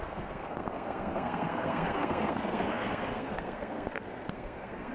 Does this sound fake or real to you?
fake